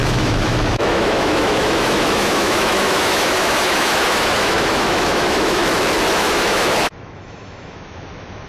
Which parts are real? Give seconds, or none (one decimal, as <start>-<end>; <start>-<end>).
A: 5.6-6.1